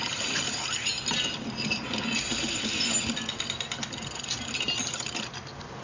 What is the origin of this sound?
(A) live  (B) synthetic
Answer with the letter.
A